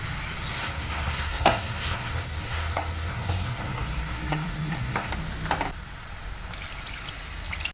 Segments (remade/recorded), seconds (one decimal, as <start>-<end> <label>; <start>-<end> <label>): 0.0-0.5 recorded; 0.5-5.1 remade; 5.1-7.7 recorded